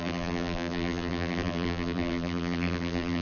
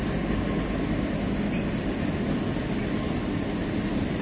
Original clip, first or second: second